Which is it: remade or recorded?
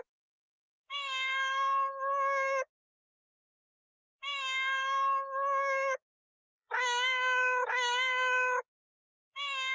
remade